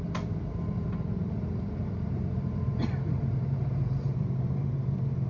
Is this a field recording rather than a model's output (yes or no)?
no